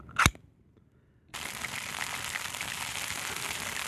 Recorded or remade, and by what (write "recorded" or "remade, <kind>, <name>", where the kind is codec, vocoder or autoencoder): remade, vocoder, BigVGAN v2